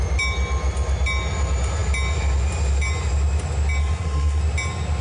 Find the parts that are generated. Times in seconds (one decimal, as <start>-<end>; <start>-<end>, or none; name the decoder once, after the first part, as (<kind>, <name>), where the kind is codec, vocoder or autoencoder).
3.8-4.4 (codec, SNAC)